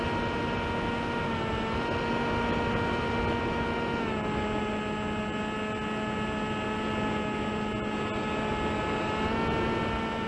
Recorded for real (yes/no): yes